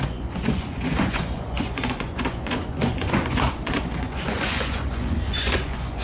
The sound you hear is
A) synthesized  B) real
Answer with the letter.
A